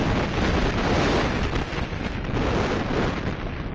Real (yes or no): yes